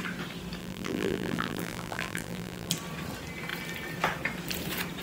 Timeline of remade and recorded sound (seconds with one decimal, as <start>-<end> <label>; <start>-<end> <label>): 0.0-0.6 recorded; 0.6-2.7 remade; 2.7-5.0 recorded